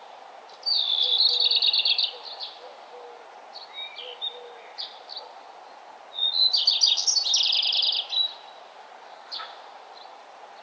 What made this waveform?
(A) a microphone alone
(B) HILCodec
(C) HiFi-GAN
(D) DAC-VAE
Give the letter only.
A